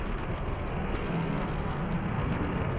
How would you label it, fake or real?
fake